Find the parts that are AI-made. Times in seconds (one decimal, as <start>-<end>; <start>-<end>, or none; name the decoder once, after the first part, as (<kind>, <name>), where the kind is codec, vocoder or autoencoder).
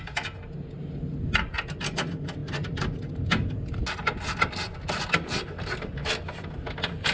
none